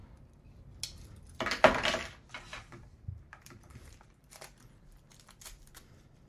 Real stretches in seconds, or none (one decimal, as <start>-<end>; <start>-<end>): 0.0-2.5; 4.3-6.3

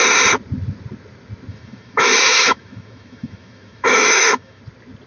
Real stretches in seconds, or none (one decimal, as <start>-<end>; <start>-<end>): 0.0-1.5; 4.6-5.1

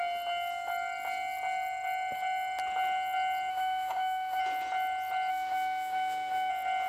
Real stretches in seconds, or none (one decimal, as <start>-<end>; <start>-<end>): 0.0-3.5; 4.4-5.3; 6.5-6.9

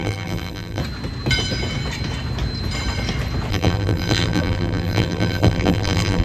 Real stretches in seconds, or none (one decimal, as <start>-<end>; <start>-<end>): 0.8-3.5

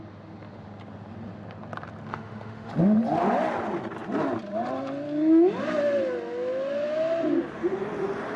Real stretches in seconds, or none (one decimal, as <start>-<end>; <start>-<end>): 0.0-2.1; 2.7-8.4

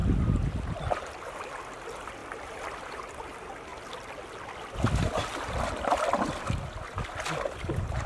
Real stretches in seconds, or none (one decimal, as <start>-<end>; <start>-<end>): 0.0-8.1

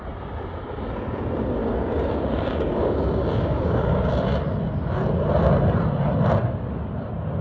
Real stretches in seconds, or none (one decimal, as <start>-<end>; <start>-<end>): 0.0-1.6; 4.1-7.4

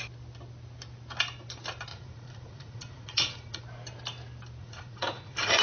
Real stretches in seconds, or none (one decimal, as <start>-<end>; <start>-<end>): 0.0-1.9; 3.6-4.6